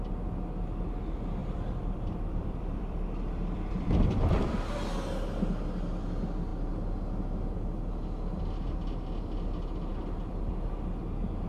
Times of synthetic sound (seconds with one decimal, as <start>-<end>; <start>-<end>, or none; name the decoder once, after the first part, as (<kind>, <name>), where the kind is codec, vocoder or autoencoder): 1.4-4.5 (vocoder, BigVGAN v2); 9.9-10.5